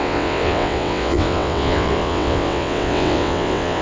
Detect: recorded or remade remade